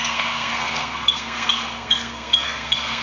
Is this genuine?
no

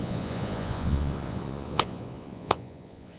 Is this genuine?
no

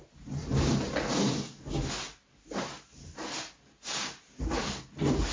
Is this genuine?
yes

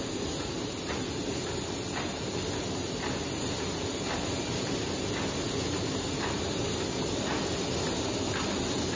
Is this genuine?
yes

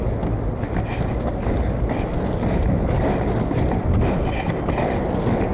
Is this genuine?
yes